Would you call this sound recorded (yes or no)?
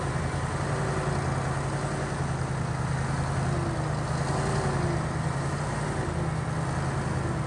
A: yes